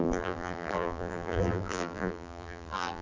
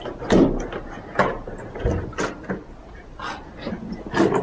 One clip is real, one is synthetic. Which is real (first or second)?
second